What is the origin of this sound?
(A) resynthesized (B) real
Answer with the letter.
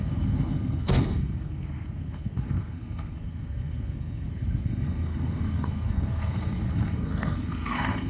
A